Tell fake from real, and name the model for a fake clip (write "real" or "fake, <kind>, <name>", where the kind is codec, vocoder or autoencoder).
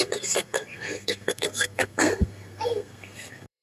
fake, codec, SNAC